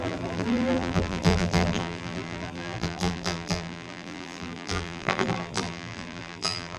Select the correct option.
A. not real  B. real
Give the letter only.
A